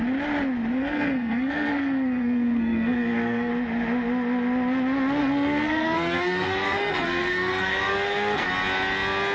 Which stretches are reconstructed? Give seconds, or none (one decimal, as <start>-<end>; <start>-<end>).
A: 0.8-3.5; 5.2-8.5